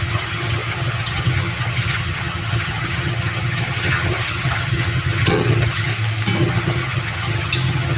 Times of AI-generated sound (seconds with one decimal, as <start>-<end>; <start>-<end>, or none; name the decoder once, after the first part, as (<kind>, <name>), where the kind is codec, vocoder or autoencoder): 0.0-5.9 (vocoder, HiFi-GAN); 6.4-8.0